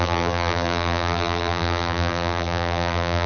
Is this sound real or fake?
fake